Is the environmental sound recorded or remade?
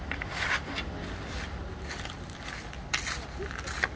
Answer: recorded